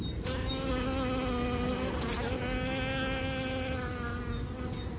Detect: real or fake real